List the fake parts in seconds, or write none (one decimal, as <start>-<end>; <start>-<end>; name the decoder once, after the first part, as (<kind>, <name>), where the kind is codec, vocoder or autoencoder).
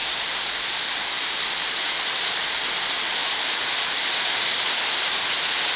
0.0-1.4 (vocoder, BigVGAN v2); 3.2-3.7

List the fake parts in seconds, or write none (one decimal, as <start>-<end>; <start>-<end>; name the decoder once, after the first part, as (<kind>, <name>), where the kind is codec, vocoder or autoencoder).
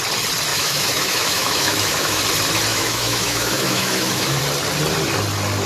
0.5-2.2 (autoencoder, DAC-VAE); 2.7-4.4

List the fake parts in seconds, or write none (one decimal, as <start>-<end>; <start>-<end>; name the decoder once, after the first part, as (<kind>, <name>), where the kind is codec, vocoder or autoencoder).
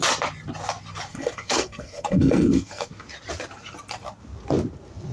1.1-2.9 (codec, SNAC)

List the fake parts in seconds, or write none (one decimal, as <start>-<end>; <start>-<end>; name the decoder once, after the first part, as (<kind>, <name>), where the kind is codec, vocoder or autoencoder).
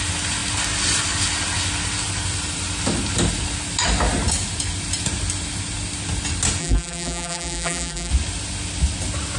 6.6-8.1 (vocoder, BigVGAN v2)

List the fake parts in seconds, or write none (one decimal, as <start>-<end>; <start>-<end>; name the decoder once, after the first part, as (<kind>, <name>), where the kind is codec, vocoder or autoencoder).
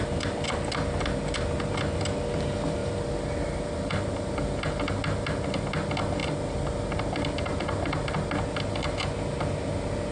2.8-4.9 (vocoder, BigVGAN v2)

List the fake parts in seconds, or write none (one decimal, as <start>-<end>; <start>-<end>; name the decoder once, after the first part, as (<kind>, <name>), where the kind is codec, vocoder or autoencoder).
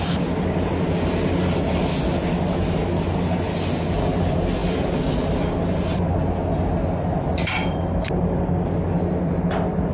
none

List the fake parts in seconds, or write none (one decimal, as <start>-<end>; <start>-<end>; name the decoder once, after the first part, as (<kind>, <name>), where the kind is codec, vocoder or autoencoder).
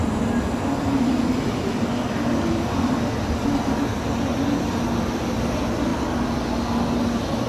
none